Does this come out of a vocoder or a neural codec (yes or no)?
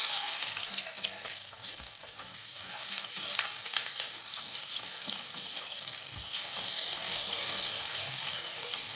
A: yes